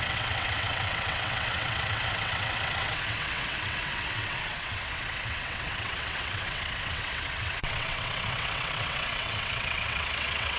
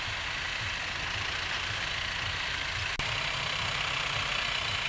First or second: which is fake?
first